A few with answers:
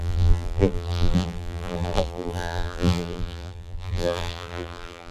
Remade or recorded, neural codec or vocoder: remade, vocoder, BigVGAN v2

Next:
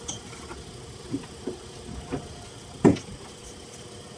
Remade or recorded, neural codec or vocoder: recorded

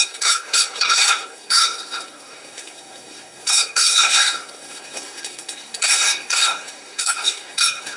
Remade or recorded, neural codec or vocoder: remade, codec, SNAC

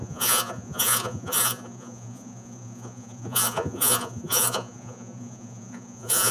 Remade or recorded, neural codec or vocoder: remade, vocoder, Vocos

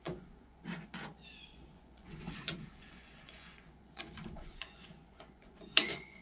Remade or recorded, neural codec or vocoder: remade, vocoder, Vocos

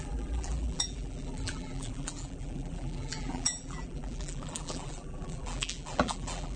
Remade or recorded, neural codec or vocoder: remade, vocoder, BigVGAN v2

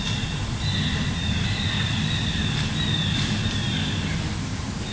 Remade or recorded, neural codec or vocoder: recorded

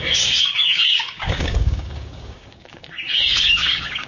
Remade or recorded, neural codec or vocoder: remade, codec, DAC